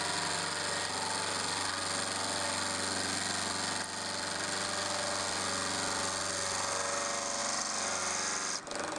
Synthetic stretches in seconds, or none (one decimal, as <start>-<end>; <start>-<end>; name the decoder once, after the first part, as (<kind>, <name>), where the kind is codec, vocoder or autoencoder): none